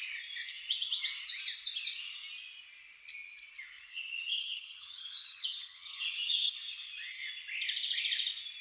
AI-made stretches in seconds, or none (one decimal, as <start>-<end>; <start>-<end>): 3.9-6.5